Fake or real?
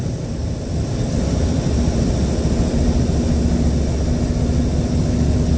real